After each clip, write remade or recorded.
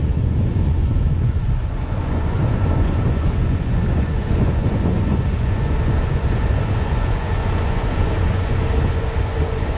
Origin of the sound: remade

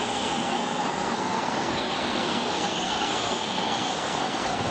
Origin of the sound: remade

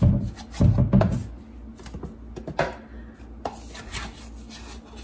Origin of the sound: recorded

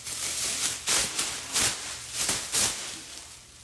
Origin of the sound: recorded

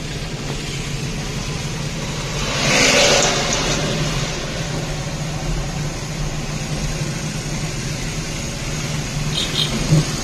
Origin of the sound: recorded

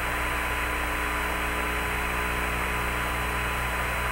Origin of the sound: recorded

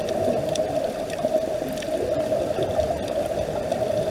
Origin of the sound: recorded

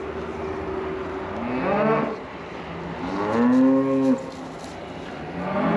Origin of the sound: recorded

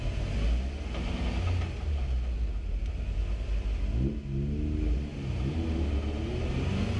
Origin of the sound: recorded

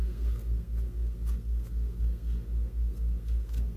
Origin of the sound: remade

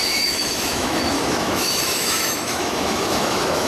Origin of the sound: remade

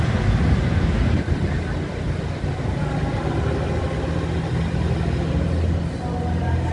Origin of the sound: recorded